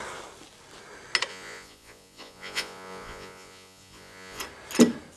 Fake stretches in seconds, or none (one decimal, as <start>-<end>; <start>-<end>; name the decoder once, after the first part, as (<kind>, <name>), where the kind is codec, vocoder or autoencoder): 1.3-4.4 (vocoder, Vocos)